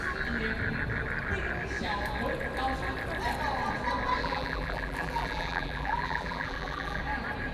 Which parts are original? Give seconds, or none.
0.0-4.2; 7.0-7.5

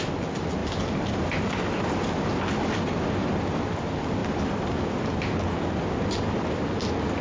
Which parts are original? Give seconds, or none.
0.0-0.6; 1.8-4.2; 5.4-7.2

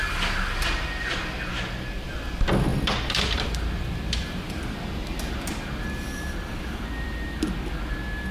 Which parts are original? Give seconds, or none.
0.0-2.7; 4.4-5.0; 7.5-8.3

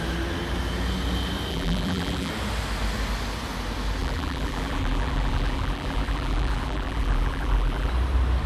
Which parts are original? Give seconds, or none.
0.0-1.5; 2.3-4.0; 7.9-8.5